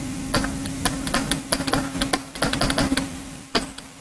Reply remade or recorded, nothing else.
recorded